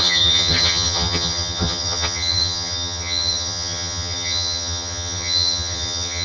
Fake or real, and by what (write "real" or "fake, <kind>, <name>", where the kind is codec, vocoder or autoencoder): fake, vocoder, HiFi-GAN